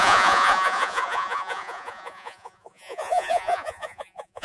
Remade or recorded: remade